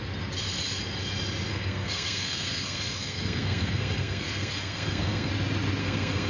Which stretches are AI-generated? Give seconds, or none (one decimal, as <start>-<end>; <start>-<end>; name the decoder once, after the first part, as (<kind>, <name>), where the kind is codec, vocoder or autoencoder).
1.5-5.3 (codec, SNAC); 5.8-6.3